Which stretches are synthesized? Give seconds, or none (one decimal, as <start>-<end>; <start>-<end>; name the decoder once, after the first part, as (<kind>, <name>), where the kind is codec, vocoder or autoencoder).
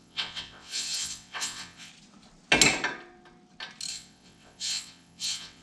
0.0-1.9 (vocoder, WaveNeXt); 3.9-5.6